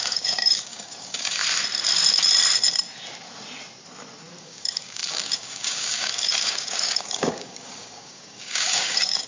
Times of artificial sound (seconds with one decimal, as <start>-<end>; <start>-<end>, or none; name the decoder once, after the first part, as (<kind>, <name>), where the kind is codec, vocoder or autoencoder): 0.0-1.4 (codec, DAC); 4.4-9.3